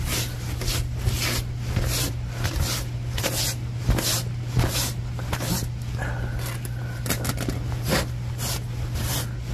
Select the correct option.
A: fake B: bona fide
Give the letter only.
B